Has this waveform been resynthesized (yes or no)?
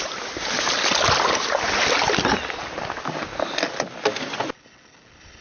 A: no